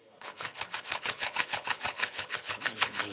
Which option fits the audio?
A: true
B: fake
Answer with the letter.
B